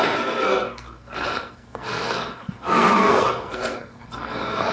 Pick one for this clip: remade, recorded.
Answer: remade